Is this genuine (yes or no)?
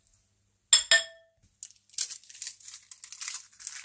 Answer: yes